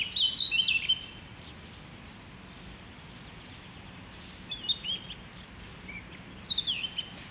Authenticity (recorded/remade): recorded